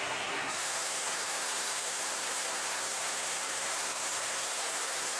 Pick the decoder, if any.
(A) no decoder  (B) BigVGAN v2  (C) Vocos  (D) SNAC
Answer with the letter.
D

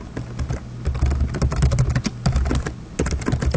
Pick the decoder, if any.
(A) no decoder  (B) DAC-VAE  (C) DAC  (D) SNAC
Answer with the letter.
A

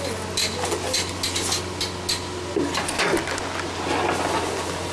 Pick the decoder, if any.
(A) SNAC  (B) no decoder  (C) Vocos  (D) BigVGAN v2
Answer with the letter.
B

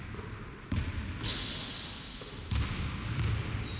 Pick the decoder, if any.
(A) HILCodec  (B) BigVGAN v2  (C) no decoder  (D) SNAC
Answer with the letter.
C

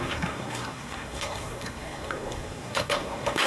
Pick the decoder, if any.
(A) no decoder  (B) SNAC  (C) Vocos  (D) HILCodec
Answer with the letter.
B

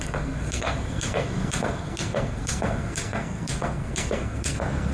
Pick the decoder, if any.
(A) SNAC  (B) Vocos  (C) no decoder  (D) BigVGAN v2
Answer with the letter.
A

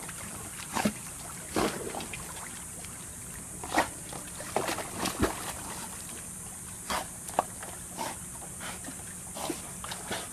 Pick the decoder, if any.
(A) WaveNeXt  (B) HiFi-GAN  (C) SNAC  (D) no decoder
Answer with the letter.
D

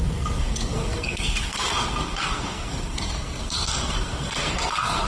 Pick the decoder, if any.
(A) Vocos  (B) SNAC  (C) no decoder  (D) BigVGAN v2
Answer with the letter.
B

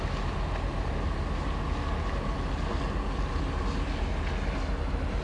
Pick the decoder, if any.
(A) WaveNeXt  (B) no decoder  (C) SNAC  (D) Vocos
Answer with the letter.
B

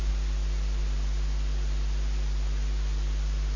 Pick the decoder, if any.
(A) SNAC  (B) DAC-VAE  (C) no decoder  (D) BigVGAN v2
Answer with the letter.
C